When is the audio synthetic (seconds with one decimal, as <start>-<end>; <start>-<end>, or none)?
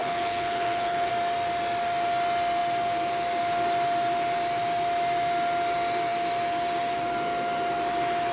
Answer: 0.0-1.1